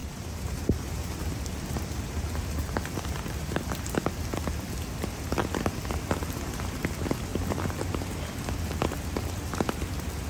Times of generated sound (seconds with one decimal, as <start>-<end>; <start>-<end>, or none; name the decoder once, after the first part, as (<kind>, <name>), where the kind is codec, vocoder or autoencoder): 0.0-3.6 (vocoder, BigVGAN v2); 7.3-8.3